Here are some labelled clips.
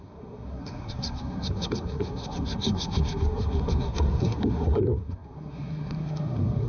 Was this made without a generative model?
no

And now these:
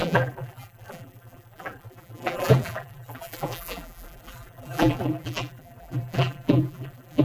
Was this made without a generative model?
no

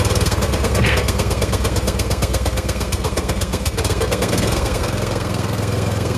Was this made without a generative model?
no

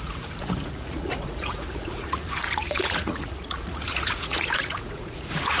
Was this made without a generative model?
no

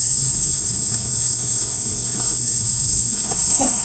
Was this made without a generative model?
no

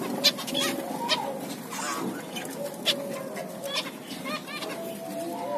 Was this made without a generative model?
yes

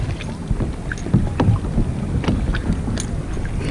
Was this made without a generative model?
yes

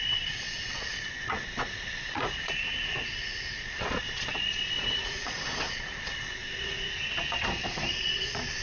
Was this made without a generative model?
no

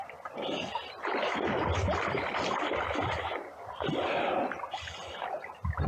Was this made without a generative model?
yes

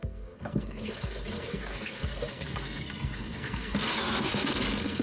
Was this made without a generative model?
no